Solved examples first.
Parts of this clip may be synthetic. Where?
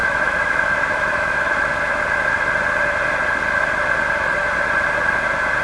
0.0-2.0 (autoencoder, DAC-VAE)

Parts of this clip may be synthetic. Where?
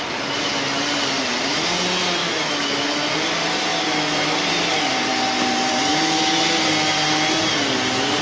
2.2-3.1 (autoencoder, DAC-VAE); 5.9-6.4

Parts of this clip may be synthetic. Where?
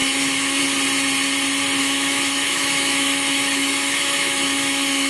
0.0-0.6 (autoencoder, DAC-VAE); 1.8-5.1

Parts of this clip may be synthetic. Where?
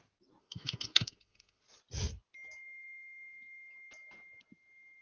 0.4-1.6 (autoencoder, DAC-VAE)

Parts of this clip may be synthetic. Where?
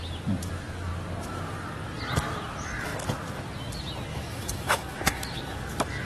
4.1-5.4 (autoencoder, DAC-VAE)